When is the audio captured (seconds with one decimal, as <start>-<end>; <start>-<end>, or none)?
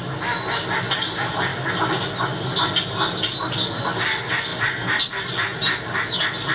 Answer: 0.0-6.5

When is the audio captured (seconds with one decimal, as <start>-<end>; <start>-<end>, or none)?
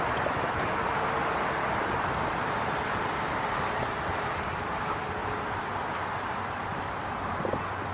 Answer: 6.7-7.3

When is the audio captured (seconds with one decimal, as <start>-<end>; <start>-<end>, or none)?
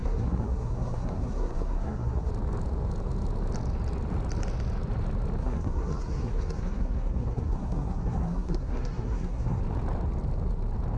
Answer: 2.3-5.4; 9.6-11.0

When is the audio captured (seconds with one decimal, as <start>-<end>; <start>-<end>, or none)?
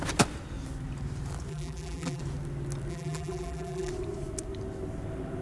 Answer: 0.0-1.5; 2.2-2.9; 3.9-5.4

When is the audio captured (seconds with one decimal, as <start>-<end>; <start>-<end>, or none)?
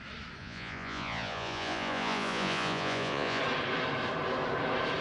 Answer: 0.0-0.4; 3.4-5.0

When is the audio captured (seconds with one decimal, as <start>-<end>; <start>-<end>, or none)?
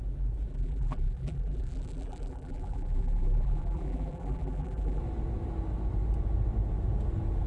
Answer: 0.0-0.5; 5.0-7.5